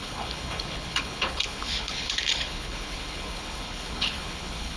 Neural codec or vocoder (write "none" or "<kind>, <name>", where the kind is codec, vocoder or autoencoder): codec, HILCodec